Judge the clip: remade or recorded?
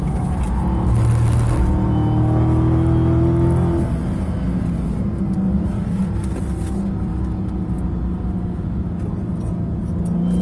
recorded